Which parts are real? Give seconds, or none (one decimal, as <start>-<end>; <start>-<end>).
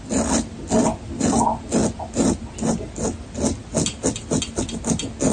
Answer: 0.0-5.3